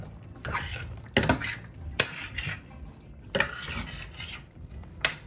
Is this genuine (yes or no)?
yes